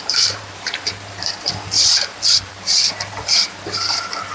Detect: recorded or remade remade